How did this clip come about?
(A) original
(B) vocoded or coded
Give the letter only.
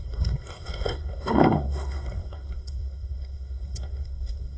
B